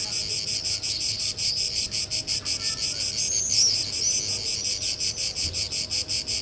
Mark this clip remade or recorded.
recorded